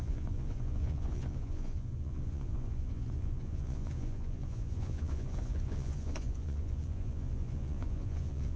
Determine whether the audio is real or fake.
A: fake